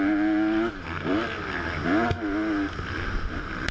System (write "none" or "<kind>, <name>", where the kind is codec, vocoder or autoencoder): none